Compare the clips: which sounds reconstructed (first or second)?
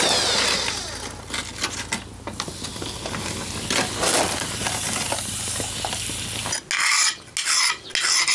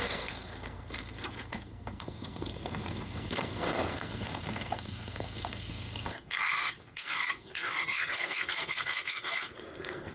second